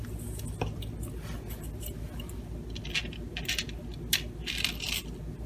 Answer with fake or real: real